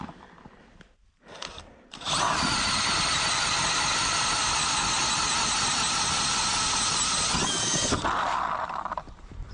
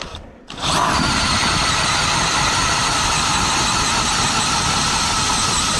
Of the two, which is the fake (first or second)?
second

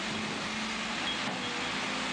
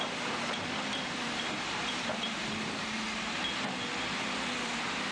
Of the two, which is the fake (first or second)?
second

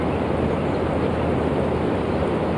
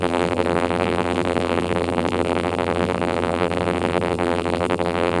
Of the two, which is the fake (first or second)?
second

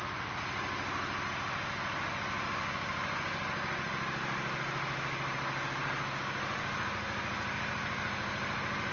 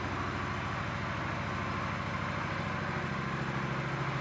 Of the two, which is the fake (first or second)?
first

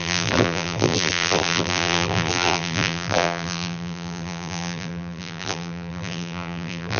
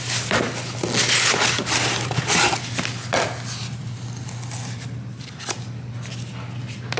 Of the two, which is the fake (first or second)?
first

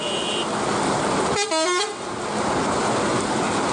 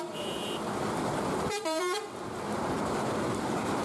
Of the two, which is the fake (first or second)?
second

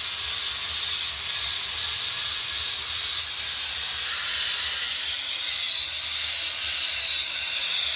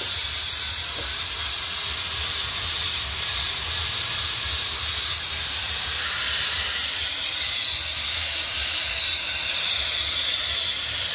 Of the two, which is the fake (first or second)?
second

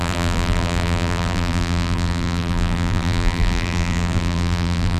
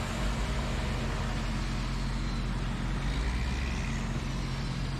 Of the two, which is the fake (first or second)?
first